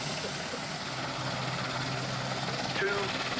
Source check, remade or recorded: recorded